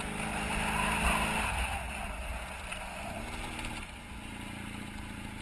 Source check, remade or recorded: recorded